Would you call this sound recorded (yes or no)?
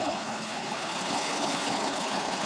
no